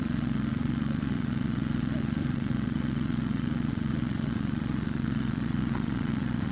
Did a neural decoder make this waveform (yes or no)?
yes